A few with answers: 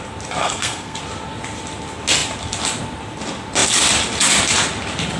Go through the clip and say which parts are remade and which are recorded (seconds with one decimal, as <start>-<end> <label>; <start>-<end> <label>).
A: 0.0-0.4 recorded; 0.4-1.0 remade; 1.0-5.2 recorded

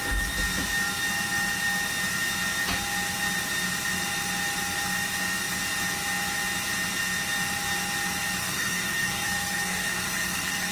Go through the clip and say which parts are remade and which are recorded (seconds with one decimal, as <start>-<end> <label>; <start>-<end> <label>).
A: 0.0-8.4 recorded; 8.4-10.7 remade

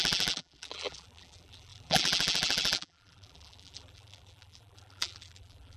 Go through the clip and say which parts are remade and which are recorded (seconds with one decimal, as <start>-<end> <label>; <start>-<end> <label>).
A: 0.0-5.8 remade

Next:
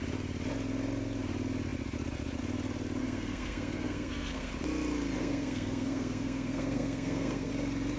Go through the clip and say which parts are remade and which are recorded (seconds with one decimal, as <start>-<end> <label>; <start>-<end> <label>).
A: 0.0-3.0 recorded; 3.0-4.5 remade; 4.5-5.2 recorded; 5.2-7.5 remade; 7.5-8.0 recorded

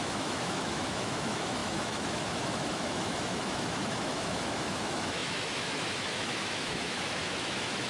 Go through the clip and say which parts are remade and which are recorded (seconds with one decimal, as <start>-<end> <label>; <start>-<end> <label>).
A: 0.0-7.9 remade

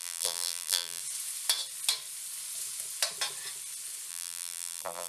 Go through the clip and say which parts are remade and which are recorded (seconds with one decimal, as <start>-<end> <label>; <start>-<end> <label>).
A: 0.0-1.0 remade; 1.0-4.1 recorded; 4.1-5.1 remade

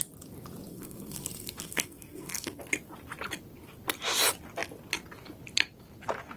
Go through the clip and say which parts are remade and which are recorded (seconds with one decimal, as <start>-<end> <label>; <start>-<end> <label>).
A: 0.0-0.7 recorded; 0.7-2.6 remade; 2.6-6.4 recorded

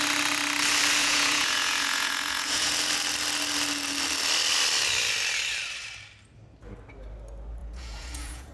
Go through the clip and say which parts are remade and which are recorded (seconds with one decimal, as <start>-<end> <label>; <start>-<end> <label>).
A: 0.0-1.0 recorded; 1.0-2.7 remade; 2.7-7.6 recorded; 7.6-8.5 remade